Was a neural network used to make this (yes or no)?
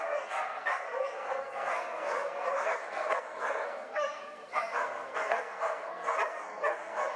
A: yes